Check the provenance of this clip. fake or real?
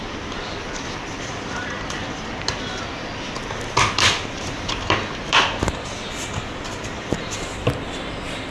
real